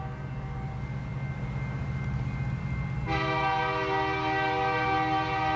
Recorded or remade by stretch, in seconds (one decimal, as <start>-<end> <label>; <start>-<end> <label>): 0.0-5.6 recorded

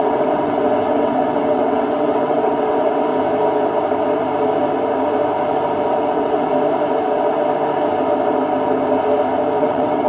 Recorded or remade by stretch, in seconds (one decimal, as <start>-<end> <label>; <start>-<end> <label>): 0.0-3.1 remade; 3.1-5.9 recorded; 5.9-6.5 remade; 6.5-9.6 recorded; 9.6-10.1 remade

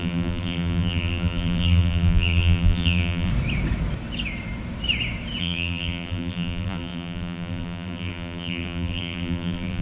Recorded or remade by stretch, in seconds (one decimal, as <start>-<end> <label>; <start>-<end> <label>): 0.0-3.3 remade; 3.3-5.4 recorded; 5.4-9.8 remade

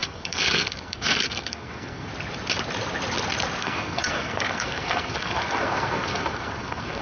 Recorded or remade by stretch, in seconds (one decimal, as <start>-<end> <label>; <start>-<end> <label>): 0.0-2.1 remade; 2.1-3.6 recorded; 3.6-7.0 remade

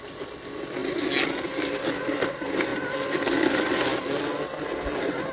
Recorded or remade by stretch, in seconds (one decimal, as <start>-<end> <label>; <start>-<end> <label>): 0.0-5.3 recorded

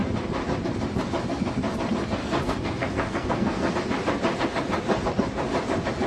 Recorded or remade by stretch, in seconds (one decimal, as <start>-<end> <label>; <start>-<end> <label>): 0.0-2.2 recorded; 2.2-3.7 remade; 3.7-6.1 recorded